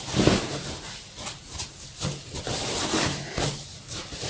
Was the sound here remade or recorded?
recorded